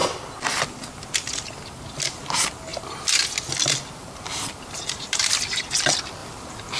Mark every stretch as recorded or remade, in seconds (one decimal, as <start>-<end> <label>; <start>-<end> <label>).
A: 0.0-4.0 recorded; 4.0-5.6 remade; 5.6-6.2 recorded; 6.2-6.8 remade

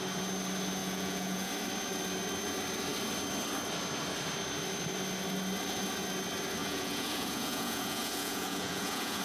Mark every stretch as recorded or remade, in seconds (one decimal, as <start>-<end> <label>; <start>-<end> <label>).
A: 0.0-0.8 recorded; 0.8-1.5 remade; 1.5-6.6 recorded; 6.6-9.2 remade

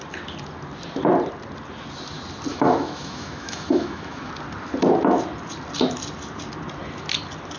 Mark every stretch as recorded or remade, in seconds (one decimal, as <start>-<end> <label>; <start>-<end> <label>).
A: 0.0-2.5 recorded; 2.5-4.3 remade; 4.3-7.6 recorded

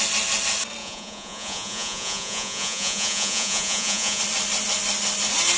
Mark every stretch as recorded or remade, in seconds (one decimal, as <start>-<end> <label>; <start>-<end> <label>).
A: 0.0-0.8 recorded; 0.8-4.2 remade; 4.2-5.6 recorded

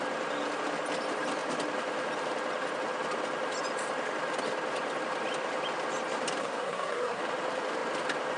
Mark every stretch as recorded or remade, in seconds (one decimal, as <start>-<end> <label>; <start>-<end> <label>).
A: 0.0-6.4 recorded; 6.4-7.2 remade; 7.2-8.4 recorded

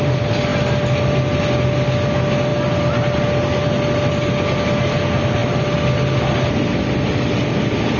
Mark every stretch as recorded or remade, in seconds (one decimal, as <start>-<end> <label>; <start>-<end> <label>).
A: 0.0-8.0 recorded